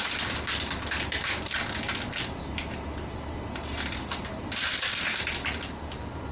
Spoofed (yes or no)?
no